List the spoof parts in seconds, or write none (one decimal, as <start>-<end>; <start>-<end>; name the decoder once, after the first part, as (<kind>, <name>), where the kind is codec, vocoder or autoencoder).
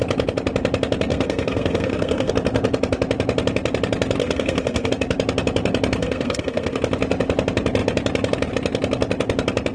1.1-2.3 (codec, SNAC); 4.2-4.9; 6.0-6.8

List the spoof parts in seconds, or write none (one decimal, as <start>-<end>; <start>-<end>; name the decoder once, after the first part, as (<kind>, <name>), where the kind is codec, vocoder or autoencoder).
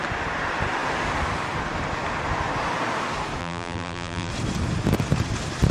3.4-4.3 (vocoder, BigVGAN v2)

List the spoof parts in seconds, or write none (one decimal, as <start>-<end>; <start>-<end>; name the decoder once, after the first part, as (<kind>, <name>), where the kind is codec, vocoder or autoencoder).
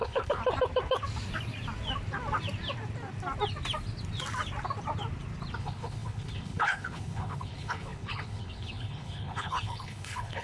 0.0-0.4 (codec, HILCodec); 5.6-10.4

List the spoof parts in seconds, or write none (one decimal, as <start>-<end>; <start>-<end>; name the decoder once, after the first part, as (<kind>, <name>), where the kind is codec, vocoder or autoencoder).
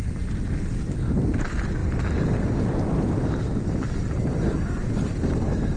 none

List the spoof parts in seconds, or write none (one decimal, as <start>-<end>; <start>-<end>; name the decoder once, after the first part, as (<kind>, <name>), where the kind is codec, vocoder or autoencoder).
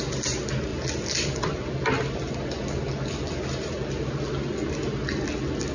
0.7-4.1 (vocoder, BigVGAN v2)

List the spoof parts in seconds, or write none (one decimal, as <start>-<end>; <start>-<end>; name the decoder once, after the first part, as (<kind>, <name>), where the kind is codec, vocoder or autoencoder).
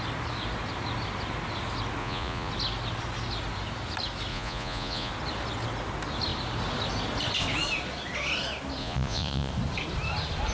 2.0-2.5 (vocoder, Vocos); 4.3-5.1; 8.8-9.5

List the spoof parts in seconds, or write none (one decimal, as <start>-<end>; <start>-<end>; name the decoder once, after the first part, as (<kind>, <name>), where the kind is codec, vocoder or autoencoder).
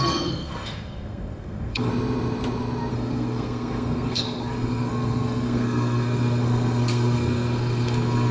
0.0-1.9 (codec, SNAC); 2.9-8.3